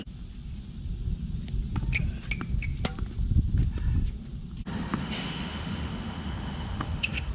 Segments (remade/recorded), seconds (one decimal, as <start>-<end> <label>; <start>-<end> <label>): 0.0-5.0 recorded; 5.0-7.3 remade